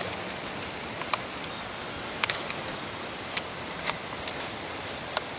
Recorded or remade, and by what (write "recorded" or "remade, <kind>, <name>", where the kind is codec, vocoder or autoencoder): recorded